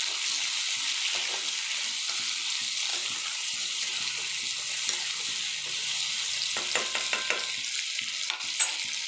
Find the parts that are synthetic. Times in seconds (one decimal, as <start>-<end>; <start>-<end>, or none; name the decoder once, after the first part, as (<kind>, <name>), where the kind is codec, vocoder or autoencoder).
2.9-4.4 (vocoder, BigVGAN v2); 5.6-6.3